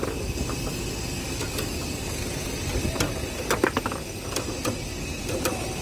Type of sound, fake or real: real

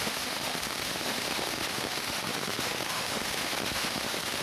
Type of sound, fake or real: fake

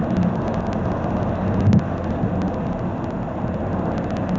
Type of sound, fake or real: real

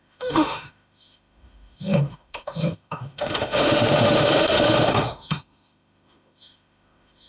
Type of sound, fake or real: fake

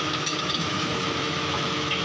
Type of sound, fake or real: fake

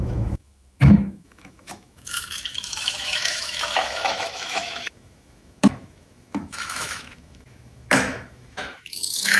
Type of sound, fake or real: fake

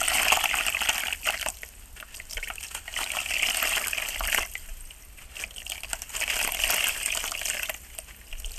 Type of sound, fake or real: real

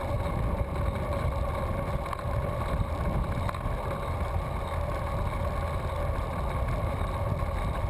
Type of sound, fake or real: real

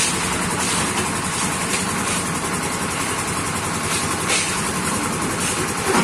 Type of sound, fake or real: real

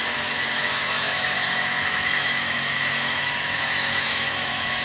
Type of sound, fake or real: fake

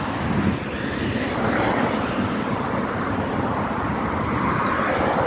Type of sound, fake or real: real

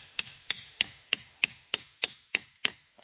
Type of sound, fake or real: fake